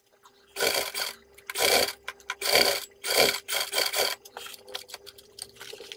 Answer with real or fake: real